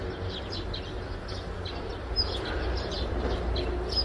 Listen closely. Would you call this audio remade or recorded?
recorded